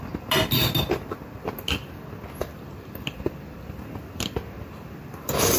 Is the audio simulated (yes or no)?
no